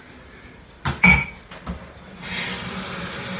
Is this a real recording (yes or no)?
yes